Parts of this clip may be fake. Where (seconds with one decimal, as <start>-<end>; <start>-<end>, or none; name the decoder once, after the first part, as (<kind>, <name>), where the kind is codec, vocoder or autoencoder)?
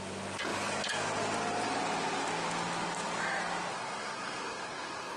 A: 3.7-5.2 (codec, SNAC)